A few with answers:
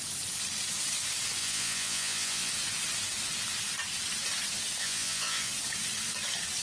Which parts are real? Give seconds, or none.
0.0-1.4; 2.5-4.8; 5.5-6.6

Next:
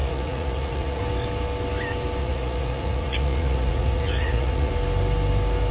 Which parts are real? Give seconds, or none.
1.0-2.2; 4.7-5.7

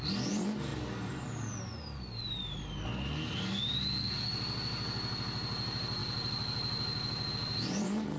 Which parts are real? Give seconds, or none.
0.0-8.2

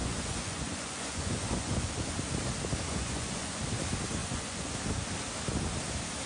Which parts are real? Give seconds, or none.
1.9-2.9; 3.6-4.2; 4.7-6.3

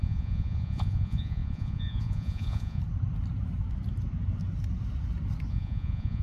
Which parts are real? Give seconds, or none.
2.8-5.5

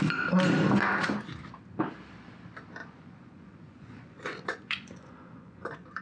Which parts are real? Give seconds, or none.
0.0-2.8